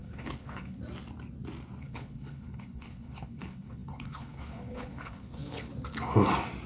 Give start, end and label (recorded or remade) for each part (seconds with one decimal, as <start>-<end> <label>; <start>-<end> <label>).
0.0-0.8 remade; 0.8-1.8 recorded; 1.8-5.7 remade; 5.7-6.7 recorded